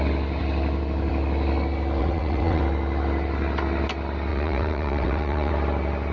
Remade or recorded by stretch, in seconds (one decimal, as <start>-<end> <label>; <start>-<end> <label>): 0.0-2.0 recorded; 2.0-2.6 remade; 2.6-4.3 recorded; 4.3-5.5 remade; 5.5-6.1 recorded